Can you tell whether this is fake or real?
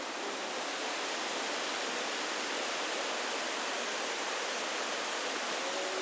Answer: real